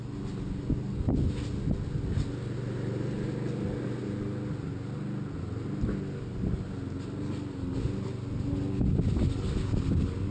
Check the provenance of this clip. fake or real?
real